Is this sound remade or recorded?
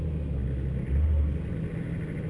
recorded